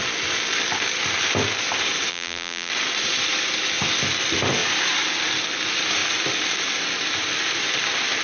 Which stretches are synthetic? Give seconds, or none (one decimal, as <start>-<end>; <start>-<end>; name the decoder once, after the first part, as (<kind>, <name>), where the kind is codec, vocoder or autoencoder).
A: 2.1-2.7 (vocoder, BigVGAN v2)